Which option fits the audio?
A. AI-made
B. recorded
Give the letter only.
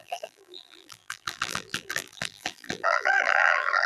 A